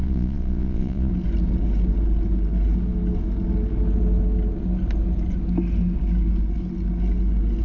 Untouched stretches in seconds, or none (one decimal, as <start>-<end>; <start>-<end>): 1.1-7.6